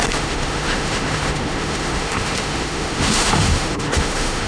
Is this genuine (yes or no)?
no